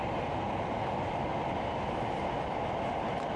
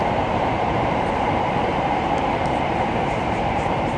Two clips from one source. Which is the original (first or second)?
first